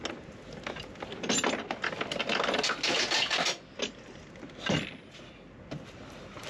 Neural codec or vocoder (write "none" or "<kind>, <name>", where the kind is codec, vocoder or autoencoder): none